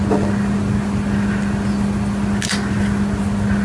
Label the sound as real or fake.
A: real